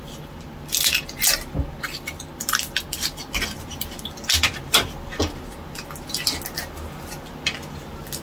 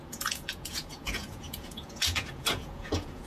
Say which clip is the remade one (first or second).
second